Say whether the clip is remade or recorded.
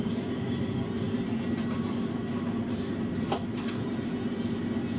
recorded